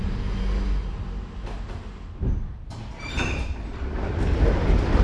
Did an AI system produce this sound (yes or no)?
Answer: no